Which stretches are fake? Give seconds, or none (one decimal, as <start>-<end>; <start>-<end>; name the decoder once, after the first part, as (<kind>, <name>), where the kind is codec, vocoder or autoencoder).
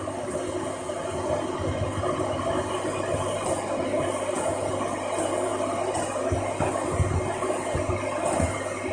5.5-6.2 (vocoder, BigVGAN v2)